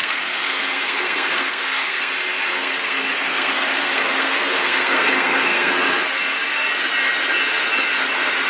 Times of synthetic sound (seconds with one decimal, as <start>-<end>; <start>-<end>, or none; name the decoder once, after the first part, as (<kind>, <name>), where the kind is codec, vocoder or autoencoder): 0.0-2.1 (codec, SNAC); 2.5-5.7